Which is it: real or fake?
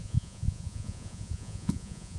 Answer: fake